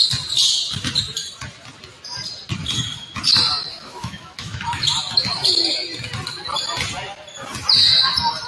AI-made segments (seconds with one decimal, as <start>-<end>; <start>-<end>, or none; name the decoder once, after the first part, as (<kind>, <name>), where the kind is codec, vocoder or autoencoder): 3.7-4.8 (autoencoder, DAC-VAE)